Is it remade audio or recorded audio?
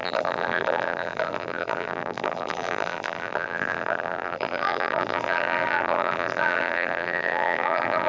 remade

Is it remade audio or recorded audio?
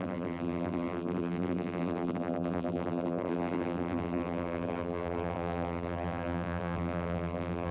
remade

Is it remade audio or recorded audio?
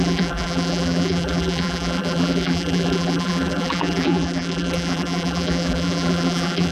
remade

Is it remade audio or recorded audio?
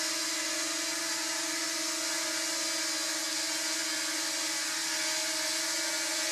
recorded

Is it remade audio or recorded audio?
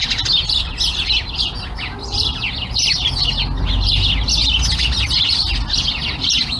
recorded